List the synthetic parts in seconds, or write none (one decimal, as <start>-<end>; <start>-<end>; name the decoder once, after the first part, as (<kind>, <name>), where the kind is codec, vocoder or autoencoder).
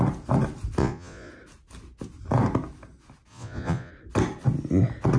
0.8-1.3 (vocoder, Vocos); 3.3-3.9